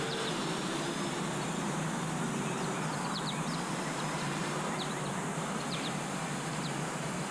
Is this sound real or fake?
fake